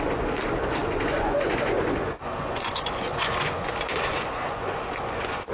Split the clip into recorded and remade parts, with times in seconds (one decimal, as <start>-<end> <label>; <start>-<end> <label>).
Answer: 0.0-5.5 remade